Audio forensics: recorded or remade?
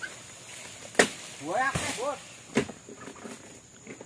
recorded